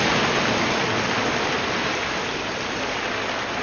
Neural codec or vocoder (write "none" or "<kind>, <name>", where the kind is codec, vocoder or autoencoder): none